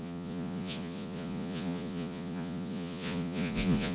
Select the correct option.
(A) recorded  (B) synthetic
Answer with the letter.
B